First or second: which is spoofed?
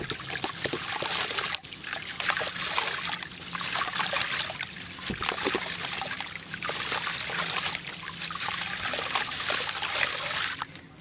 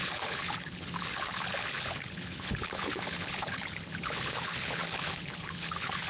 second